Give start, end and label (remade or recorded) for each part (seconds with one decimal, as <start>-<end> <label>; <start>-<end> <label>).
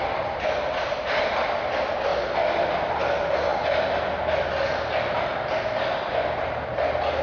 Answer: 0.0-1.2 remade; 1.2-7.2 recorded